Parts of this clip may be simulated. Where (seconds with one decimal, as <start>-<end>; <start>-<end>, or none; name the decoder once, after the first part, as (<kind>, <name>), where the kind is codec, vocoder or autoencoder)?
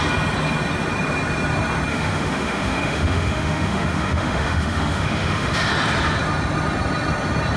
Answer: 1.9-5.7 (autoencoder, DAC-VAE)